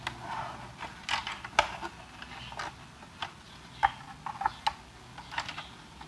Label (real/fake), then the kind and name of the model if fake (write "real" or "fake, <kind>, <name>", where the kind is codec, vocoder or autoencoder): real